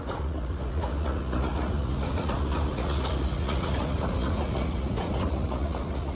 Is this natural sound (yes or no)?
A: no